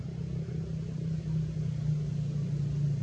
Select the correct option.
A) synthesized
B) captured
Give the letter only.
B